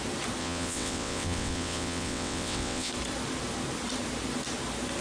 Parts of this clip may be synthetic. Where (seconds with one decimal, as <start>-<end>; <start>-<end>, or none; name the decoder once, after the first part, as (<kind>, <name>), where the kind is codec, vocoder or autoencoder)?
0.4-2.9 (vocoder, WaveNeXt)